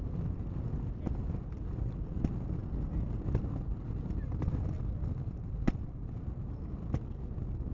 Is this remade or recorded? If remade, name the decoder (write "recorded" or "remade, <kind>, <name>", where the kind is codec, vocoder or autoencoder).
recorded